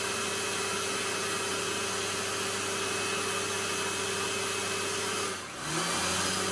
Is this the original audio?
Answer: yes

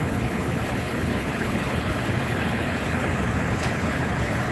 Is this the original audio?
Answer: no